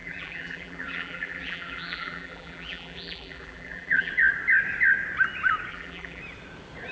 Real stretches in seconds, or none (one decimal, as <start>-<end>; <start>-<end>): 4.1-5.7; 6.2-6.9